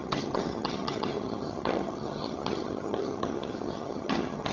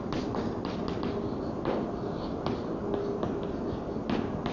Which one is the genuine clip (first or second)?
second